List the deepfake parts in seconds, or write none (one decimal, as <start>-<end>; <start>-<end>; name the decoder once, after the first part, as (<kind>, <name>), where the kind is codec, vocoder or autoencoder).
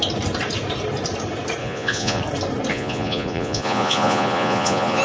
1.6-2.2 (vocoder, Vocos); 2.7-5.0